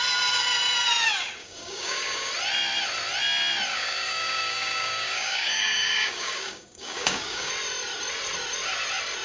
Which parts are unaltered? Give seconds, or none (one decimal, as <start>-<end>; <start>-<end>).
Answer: 0.0-1.4; 2.3-3.7; 7.5-9.2

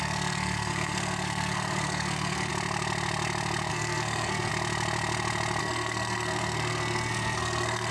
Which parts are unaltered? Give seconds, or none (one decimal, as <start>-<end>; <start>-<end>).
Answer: 2.5-3.7; 4.5-5.6

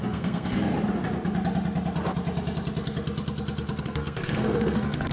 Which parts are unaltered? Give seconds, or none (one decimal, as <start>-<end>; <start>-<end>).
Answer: 0.7-3.8

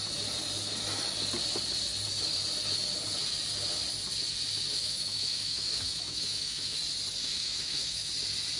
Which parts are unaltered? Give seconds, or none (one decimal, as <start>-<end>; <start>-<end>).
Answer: 0.0-4.7; 6.8-7.2; 8.1-8.6

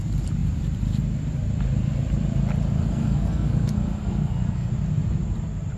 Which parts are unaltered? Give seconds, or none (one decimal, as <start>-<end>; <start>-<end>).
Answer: 0.0-2.8; 4.7-5.8

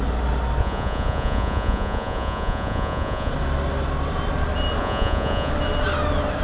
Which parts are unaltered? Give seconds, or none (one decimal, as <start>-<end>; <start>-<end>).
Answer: 0.0-0.6; 3.3-4.8; 5.5-6.4

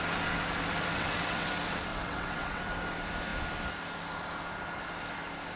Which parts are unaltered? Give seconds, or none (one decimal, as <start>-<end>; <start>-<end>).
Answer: 0.0-0.9; 1.5-1.9; 2.6-5.6

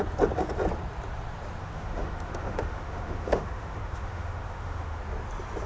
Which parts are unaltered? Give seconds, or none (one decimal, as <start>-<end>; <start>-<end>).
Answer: 0.0-1.6; 5.0-5.7